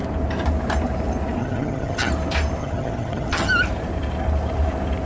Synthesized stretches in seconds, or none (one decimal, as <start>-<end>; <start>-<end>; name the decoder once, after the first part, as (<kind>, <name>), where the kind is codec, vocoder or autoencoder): 1.4-2.1 (vocoder, HiFi-GAN); 2.6-3.5